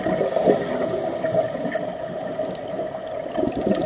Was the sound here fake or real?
real